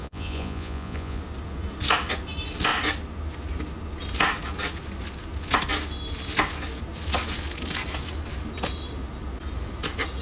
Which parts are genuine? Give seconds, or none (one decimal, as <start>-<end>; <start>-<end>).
1.2-10.2